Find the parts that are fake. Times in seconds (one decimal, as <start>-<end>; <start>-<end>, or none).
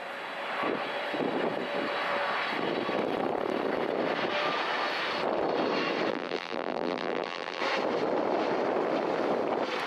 6.1-7.6